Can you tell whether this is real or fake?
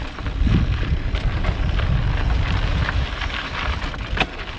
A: real